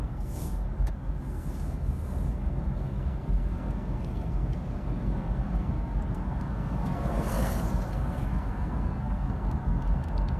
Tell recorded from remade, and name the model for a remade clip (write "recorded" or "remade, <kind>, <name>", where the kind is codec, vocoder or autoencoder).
remade, codec, SNAC